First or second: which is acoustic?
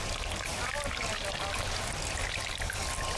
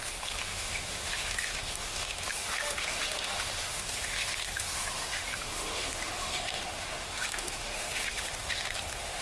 first